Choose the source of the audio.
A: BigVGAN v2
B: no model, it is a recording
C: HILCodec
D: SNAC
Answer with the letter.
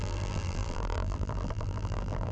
A